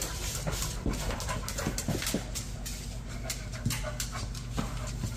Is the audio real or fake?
real